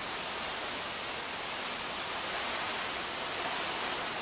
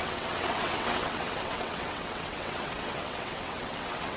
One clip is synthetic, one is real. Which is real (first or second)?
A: first